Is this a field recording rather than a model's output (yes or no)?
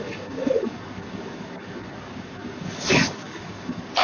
no